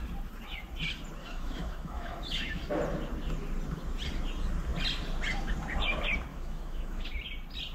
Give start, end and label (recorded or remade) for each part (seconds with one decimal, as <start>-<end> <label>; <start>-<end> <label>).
0.0-1.2 recorded; 1.2-2.6 remade; 2.6-6.3 recorded; 6.3-7.1 remade; 7.1-7.7 recorded